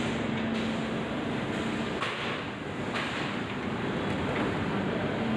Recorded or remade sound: recorded